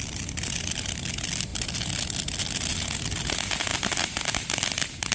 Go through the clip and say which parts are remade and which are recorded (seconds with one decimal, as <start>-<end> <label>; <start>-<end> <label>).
0.0-5.1 recorded